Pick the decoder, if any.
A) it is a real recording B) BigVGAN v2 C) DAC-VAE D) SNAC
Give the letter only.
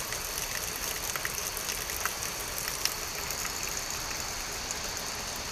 A